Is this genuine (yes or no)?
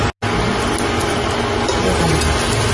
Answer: yes